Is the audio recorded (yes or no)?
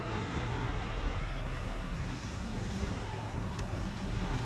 no